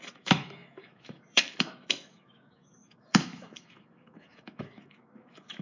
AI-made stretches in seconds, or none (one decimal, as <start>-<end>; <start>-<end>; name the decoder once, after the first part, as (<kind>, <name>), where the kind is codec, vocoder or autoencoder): 0.0-5.6 (autoencoder, DAC-VAE)